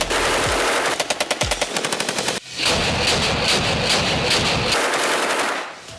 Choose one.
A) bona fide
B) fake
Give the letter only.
A